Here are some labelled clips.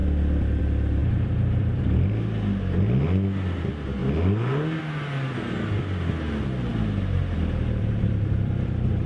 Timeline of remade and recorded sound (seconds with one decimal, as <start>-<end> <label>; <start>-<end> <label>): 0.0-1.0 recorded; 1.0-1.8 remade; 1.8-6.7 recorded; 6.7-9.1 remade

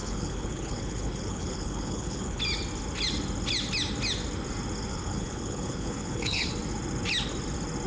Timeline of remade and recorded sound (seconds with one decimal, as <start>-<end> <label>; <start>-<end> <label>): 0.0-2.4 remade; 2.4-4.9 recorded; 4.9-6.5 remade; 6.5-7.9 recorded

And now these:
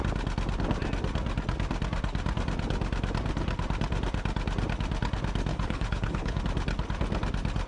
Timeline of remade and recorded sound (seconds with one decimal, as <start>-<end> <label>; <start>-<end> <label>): 0.0-5.5 recorded; 5.5-6.4 remade; 6.4-7.7 recorded

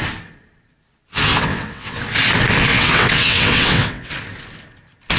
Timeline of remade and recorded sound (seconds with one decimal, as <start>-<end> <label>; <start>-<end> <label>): 0.0-1.3 recorded; 1.3-2.0 remade; 2.0-2.7 recorded; 2.7-4.1 remade; 4.1-5.2 recorded